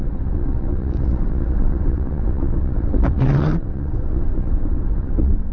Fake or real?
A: fake